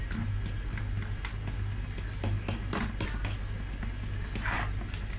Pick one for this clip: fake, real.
real